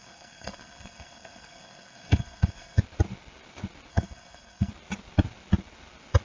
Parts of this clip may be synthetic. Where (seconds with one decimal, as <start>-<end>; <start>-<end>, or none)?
0.0-2.8; 3.9-4.7